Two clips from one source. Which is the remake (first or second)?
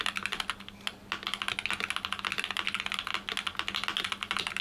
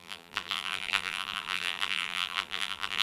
second